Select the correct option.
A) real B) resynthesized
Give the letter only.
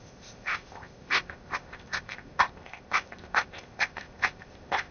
B